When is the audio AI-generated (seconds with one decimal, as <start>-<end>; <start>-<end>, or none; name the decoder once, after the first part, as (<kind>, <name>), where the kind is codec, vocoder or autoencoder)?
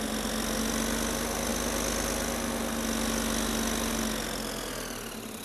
none